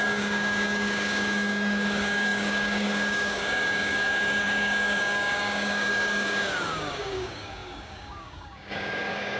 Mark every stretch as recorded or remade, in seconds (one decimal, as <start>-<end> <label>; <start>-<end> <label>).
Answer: 0.0-9.4 remade